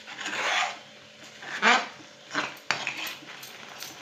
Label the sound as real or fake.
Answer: real